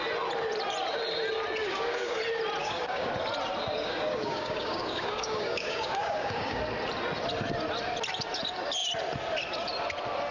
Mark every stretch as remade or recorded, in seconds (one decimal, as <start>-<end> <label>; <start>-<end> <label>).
0.0-1.6 recorded; 1.6-2.2 remade; 2.2-2.6 recorded; 2.6-3.1 remade; 3.1-3.8 recorded; 3.8-6.6 remade; 6.6-10.3 recorded